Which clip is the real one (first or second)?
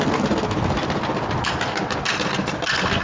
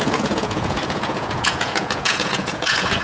first